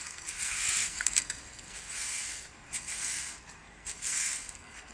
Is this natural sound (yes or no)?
no